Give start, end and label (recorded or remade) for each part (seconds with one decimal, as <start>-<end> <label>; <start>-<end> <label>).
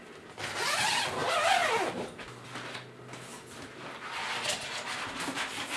0.0-5.8 recorded